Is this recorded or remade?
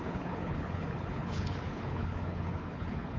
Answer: remade